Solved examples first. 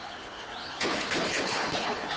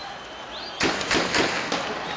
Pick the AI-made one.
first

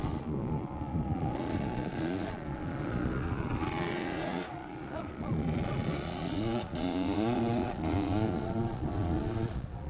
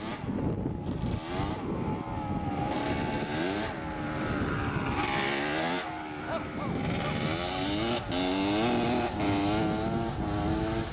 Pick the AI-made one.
first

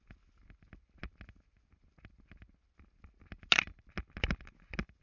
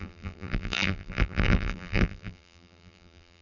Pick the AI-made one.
second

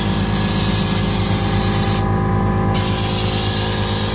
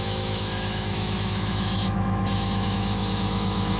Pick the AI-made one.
second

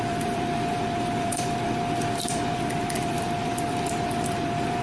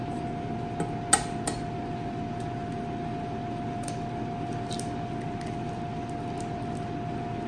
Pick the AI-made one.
first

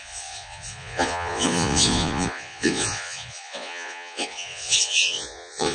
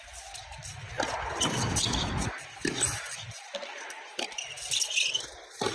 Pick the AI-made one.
first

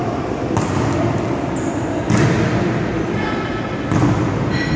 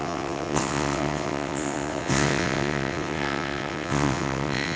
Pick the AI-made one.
second